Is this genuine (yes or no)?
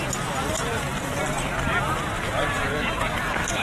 yes